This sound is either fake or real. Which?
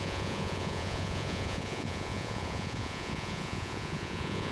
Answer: fake